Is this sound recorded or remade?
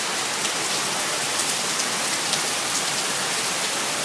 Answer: recorded